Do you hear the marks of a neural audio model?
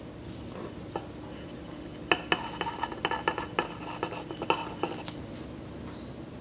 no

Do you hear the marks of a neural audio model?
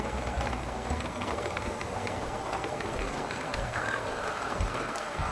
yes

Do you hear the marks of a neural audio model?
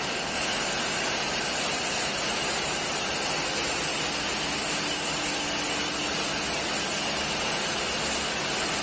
no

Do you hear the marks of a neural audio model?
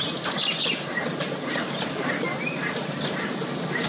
no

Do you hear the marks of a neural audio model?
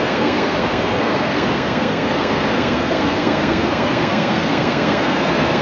yes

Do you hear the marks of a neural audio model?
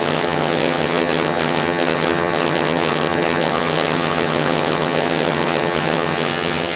yes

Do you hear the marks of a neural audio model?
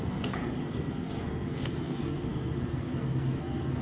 yes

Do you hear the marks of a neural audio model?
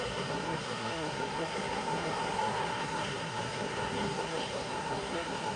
yes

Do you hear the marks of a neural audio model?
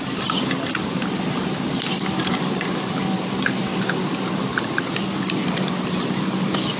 no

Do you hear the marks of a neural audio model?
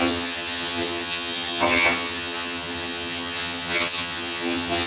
yes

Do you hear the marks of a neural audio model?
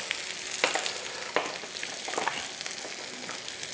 no